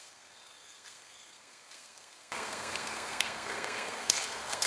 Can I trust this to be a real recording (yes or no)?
no